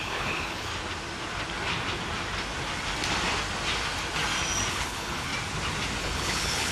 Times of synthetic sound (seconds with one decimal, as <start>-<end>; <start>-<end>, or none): 0.0-0.7; 4.7-5.3; 6.0-6.7